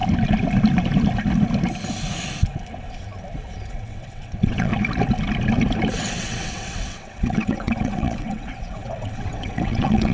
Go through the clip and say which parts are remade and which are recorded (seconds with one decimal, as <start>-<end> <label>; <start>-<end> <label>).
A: 0.0-3.7 recorded; 3.7-4.7 remade; 4.7-6.0 recorded; 6.0-10.1 remade